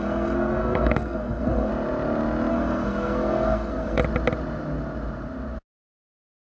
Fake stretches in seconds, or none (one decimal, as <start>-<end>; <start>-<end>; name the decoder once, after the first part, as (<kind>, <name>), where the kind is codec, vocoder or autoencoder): 0.0-1.7 (codec, SNAC); 2.5-4.0; 6.1-6.5